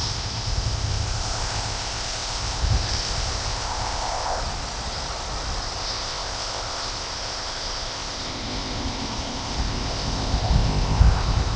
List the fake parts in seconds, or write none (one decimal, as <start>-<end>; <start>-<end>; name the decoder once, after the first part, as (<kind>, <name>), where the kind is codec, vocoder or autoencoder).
0.0-4.4 (codec, ZipCodec); 5.8-11.6